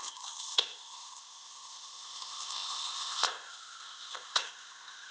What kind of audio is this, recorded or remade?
remade